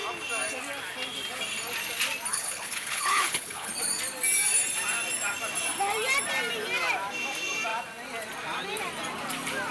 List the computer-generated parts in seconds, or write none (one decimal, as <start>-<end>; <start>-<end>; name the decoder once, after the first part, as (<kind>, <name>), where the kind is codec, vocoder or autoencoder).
2.3-3.7 (codec, HILCodec)